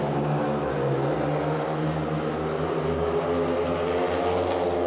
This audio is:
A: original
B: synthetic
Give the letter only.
A